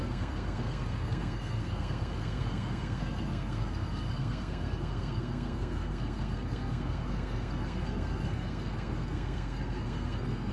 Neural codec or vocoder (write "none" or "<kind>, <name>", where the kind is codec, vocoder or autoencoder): codec, SNAC